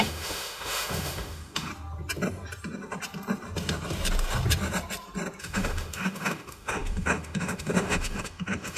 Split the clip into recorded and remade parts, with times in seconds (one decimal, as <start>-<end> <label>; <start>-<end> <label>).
0.0-1.7 remade; 1.7-5.4 recorded; 5.4-8.8 remade

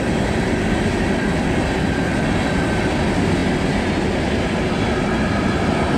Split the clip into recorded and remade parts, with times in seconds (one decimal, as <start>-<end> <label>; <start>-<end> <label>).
0.0-6.0 recorded

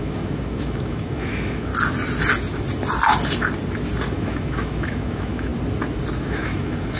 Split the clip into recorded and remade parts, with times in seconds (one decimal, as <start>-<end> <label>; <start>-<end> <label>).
0.0-1.7 remade; 1.7-4.1 recorded; 4.1-5.5 remade; 5.5-6.2 recorded; 6.2-7.0 remade

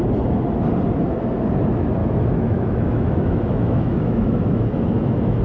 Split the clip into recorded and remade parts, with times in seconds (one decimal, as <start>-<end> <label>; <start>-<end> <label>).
0.0-2.0 recorded; 2.0-5.4 remade

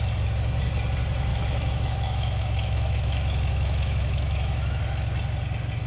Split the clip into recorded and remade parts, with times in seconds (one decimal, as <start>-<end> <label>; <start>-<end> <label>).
0.0-1.3 recorded; 1.3-4.8 remade; 4.8-5.9 recorded

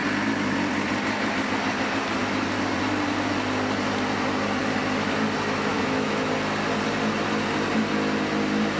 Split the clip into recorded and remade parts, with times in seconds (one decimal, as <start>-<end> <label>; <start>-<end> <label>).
0.0-5.7 recorded; 5.7-6.3 remade; 6.3-8.8 recorded

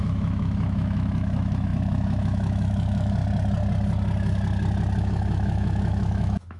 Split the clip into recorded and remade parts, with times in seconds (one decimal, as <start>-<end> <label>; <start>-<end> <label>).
0.0-3.2 remade; 3.2-5.0 recorded; 5.0-6.6 remade

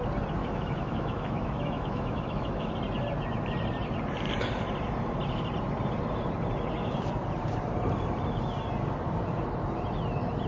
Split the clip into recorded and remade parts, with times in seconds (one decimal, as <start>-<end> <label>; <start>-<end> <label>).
0.0-0.4 recorded; 0.4-2.7 remade; 2.7-10.5 recorded